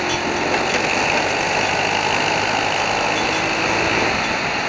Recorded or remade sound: recorded